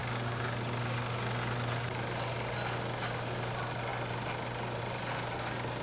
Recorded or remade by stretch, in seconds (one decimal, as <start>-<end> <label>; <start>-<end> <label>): 0.0-5.8 recorded